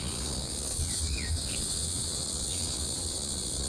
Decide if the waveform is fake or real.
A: fake